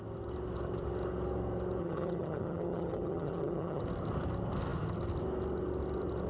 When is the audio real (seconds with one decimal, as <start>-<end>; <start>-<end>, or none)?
0.0-1.8; 3.8-6.3

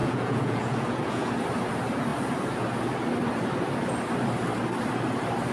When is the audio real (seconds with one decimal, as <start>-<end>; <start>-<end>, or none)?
1.3-5.5

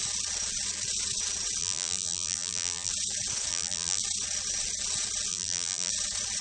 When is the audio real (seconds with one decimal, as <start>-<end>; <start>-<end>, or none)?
0.0-1.6; 2.9-3.5; 4.0-5.3; 5.9-6.4

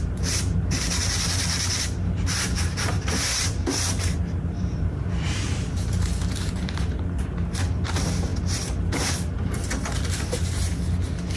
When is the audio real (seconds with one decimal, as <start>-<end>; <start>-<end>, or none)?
8.3-11.4

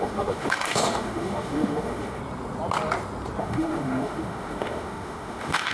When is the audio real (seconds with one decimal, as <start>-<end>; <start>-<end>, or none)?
2.2-3.4

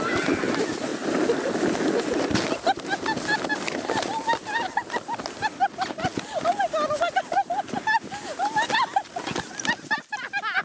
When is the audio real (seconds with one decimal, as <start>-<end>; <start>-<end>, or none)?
0.0-10.6